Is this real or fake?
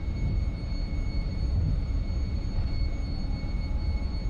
fake